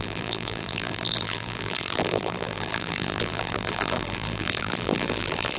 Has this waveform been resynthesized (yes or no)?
yes